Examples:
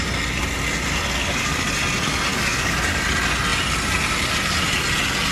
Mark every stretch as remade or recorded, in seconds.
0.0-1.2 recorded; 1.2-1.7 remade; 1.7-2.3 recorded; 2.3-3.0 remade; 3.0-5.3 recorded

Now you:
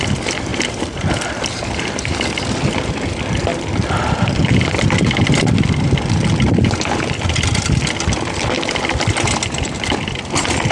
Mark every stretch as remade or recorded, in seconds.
0.0-10.7 recorded